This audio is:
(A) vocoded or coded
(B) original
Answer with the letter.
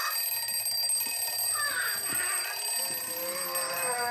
B